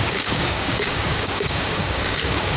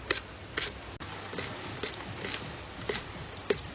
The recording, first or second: second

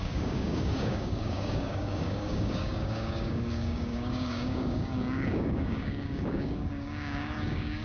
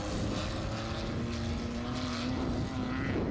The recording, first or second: second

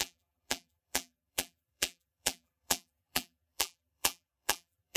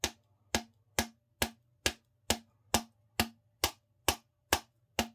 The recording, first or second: second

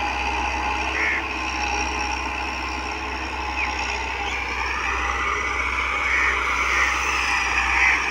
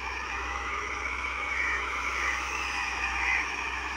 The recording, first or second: first